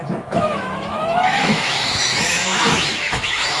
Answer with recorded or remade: remade